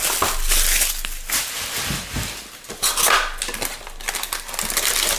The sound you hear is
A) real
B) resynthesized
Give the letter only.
A